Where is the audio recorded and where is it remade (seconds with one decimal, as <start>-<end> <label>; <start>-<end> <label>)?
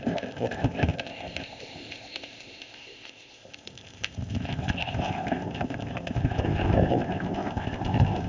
0.0-8.3 remade